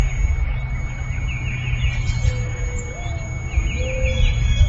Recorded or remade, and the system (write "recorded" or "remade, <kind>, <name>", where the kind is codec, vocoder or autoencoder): recorded